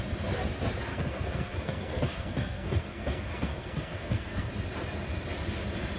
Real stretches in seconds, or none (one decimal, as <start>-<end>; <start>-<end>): 0.0-0.9; 4.5-6.0